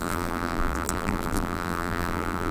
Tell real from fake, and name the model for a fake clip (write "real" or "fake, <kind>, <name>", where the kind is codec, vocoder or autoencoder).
fake, vocoder, BigVGAN v2